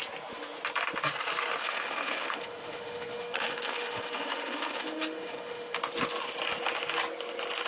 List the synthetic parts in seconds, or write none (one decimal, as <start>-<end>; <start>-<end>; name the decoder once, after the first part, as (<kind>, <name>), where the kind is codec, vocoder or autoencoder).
1.6-5.8 (autoencoder, DAC-VAE)